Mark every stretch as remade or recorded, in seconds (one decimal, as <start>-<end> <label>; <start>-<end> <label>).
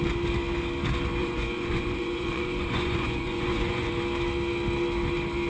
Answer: 0.0-1.2 recorded; 1.2-3.9 remade; 3.9-5.5 recorded